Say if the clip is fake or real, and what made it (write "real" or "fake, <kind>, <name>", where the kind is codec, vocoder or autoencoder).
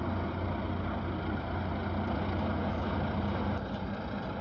real